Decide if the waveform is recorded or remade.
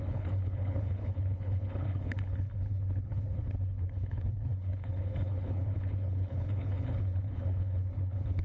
remade